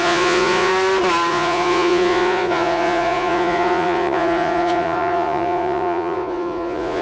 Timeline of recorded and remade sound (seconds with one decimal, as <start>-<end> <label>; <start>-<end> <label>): 0.0-0.7 remade; 0.7-1.3 recorded; 1.3-7.0 remade